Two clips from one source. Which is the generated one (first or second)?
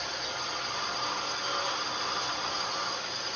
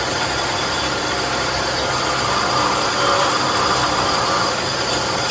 second